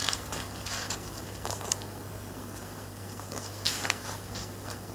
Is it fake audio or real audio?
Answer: fake